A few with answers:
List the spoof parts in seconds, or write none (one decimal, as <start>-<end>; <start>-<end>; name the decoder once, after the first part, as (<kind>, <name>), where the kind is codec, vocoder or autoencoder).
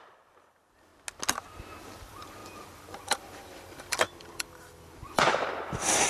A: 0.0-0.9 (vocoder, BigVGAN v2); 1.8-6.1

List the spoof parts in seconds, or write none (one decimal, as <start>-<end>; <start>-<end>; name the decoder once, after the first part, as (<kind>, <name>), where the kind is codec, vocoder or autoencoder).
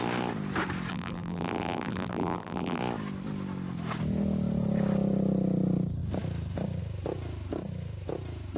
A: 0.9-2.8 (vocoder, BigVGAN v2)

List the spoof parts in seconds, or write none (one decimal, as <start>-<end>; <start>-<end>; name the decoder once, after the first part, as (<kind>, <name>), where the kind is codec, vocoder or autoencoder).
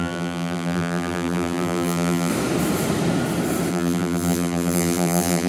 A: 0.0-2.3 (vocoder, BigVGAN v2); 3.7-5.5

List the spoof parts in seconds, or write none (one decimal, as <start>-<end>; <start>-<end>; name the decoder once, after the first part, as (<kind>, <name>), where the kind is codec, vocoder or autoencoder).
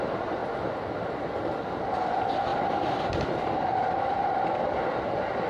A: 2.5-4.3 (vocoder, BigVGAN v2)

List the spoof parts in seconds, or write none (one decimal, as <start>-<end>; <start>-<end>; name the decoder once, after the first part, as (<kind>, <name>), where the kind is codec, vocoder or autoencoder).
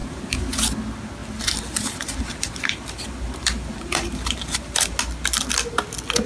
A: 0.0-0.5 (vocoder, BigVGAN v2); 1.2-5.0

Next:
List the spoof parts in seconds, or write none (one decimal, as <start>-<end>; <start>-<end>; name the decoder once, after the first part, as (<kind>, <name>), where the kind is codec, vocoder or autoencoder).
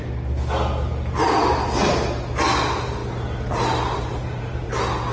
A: none